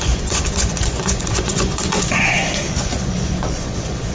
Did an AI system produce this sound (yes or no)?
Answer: yes